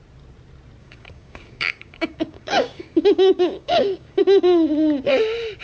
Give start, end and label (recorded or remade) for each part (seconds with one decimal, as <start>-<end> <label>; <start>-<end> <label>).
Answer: 0.0-0.8 recorded; 0.8-4.2 remade; 4.2-5.6 recorded